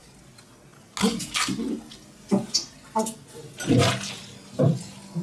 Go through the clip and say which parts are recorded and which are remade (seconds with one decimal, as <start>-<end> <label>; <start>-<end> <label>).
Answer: 0.0-5.2 recorded